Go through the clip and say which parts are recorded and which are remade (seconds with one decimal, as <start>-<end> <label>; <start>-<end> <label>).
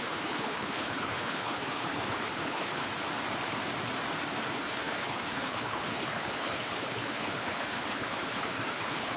0.0-2.8 remade; 2.8-4.5 recorded; 4.5-9.2 remade